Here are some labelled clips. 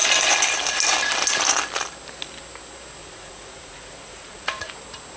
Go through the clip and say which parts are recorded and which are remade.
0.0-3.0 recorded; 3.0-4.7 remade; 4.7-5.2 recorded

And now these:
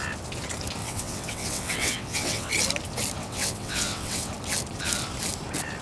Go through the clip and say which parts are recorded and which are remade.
0.0-0.8 recorded; 0.8-2.5 remade; 2.5-3.2 recorded; 3.2-4.3 remade; 4.3-5.8 recorded

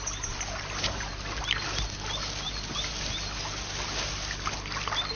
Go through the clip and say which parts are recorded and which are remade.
0.0-5.2 recorded